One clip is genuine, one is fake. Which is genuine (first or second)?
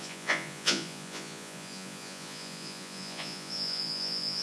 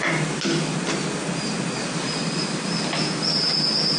second